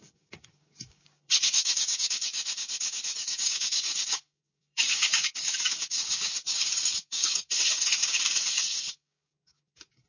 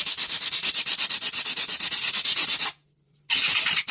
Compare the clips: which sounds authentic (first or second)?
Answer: second